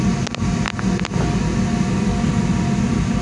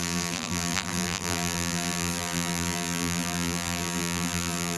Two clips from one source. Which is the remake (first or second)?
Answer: second